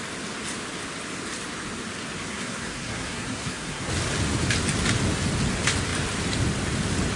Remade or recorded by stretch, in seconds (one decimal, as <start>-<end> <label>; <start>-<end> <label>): 0.0-2.3 recorded; 2.3-3.9 remade; 3.9-7.2 recorded